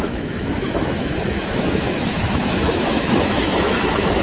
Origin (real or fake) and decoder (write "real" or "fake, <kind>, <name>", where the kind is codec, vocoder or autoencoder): fake, autoencoder, DAC-VAE